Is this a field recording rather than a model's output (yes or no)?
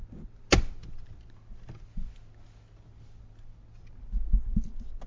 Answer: yes